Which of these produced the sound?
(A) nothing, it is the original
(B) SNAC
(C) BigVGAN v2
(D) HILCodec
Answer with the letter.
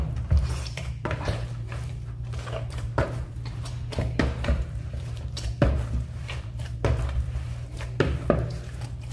C